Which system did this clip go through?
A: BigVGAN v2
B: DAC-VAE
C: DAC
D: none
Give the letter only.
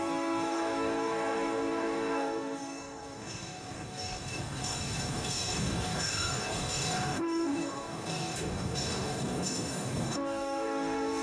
C